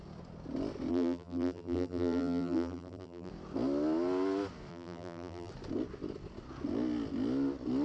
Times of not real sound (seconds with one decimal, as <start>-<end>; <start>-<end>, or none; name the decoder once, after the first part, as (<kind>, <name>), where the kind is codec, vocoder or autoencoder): 0.9-3.3 (vocoder, BigVGAN v2); 4.7-5.5